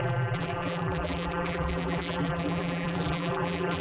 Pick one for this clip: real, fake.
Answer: fake